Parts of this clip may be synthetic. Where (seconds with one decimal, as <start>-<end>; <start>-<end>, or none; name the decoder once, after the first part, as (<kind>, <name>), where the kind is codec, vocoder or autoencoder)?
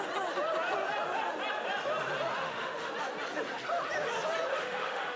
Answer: 2.4-2.9 (autoencoder, DAC-VAE); 4.5-5.2